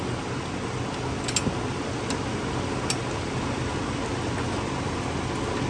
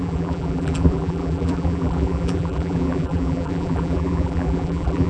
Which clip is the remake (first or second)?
second